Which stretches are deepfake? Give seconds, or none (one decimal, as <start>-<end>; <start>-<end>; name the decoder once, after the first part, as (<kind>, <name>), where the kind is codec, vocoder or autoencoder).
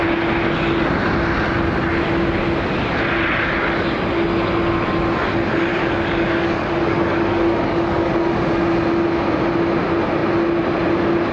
5.7-8.1 (codec, DAC)